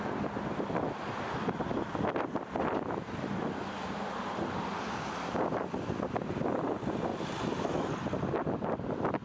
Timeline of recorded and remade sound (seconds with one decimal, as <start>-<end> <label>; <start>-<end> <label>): 0.0-9.2 recorded